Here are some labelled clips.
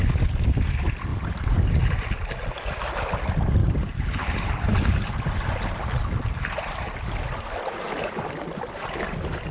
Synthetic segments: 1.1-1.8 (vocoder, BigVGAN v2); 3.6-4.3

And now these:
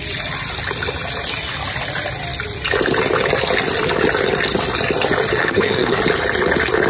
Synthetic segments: 5.4-6.0 (codec, SNAC)